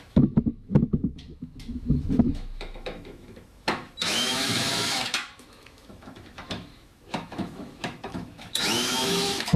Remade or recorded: remade